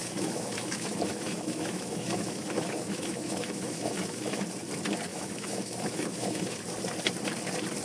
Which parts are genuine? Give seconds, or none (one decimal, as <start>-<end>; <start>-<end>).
4.4-5.1; 6.6-7.8